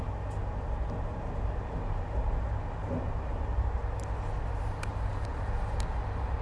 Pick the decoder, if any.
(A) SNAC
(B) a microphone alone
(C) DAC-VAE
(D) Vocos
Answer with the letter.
B